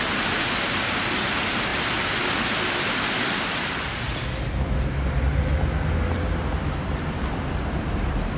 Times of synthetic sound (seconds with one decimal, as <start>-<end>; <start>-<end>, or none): none